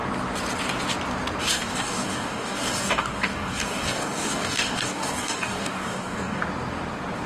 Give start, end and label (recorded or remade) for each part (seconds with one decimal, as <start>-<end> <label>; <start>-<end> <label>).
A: 0.0-1.4 recorded; 1.4-6.4 remade; 6.4-7.3 recorded